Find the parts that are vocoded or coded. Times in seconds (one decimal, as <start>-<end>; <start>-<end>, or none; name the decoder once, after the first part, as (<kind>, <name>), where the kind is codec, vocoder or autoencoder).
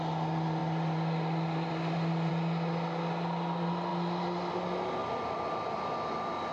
5.0-6.5 (vocoder, BigVGAN v2)